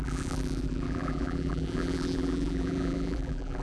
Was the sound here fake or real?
fake